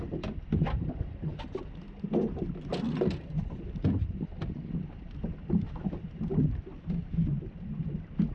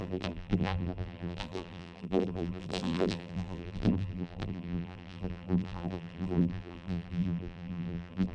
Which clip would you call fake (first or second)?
second